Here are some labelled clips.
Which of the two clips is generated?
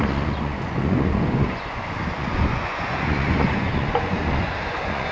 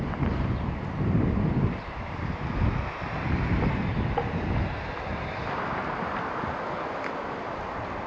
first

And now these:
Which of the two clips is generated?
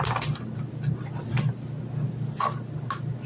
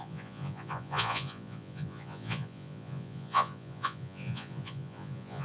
second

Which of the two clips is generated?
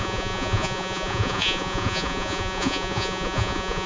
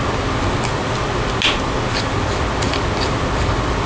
first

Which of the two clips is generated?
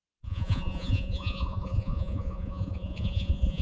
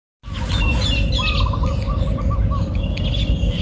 first